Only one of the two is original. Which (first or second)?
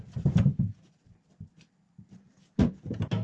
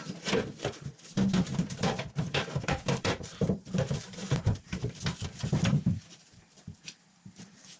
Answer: first